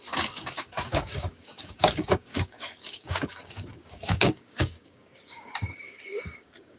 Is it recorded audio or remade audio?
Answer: remade